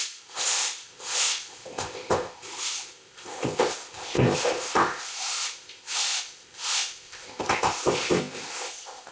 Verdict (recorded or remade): remade